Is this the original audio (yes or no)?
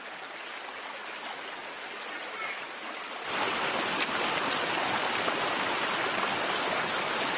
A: yes